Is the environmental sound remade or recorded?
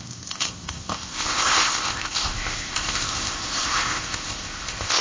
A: remade